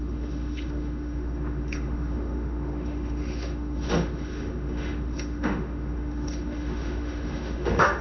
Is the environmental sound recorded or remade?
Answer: remade